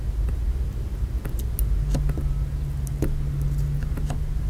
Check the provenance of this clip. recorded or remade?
recorded